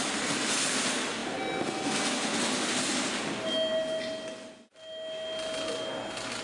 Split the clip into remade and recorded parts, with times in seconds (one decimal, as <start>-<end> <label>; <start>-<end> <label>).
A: 0.0-6.4 recorded